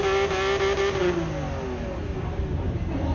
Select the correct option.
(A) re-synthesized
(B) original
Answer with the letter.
B